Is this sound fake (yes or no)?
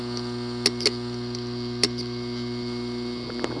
no